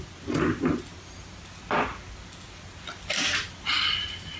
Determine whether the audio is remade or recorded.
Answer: recorded